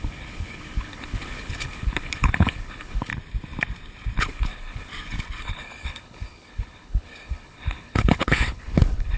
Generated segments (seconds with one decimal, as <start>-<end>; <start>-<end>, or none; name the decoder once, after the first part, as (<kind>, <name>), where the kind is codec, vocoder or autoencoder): 0.0-3.1 (codec, HILCodec); 4.2-4.9; 5.4-9.2